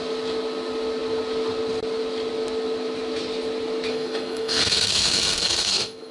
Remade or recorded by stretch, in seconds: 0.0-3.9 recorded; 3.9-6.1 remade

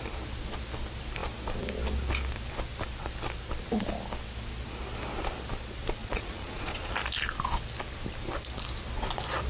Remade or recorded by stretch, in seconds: 0.0-6.0 recorded; 6.0-6.9 remade; 6.9-9.5 recorded